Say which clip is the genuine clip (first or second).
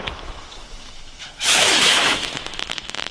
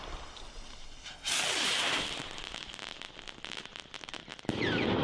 second